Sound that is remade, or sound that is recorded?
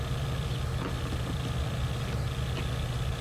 recorded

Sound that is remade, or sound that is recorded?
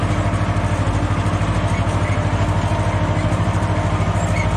recorded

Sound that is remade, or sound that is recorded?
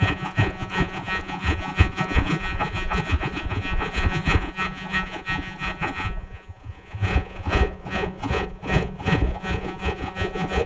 remade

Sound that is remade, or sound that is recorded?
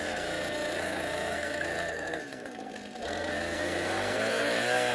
remade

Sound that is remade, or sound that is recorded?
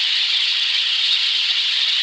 remade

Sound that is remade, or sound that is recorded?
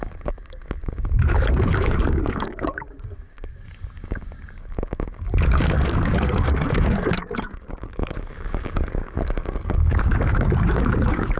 remade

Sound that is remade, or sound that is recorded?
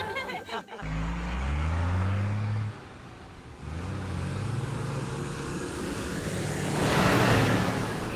remade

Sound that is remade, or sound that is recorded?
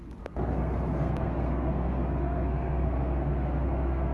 remade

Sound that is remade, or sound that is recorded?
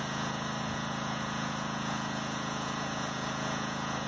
remade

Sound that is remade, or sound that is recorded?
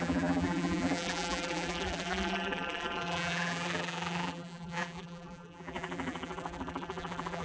remade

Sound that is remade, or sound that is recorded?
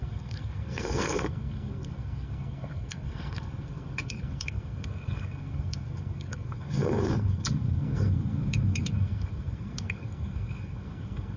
remade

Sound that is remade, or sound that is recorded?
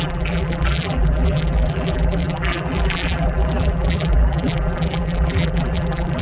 remade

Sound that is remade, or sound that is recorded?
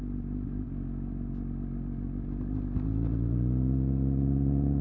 recorded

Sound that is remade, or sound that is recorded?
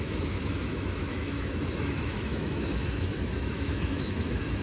remade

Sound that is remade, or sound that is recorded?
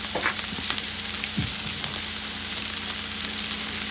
recorded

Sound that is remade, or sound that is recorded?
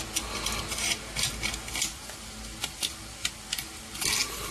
recorded